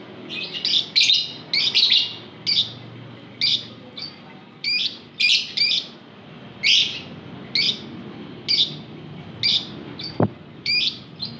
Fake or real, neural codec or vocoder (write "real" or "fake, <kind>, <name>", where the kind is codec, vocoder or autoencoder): real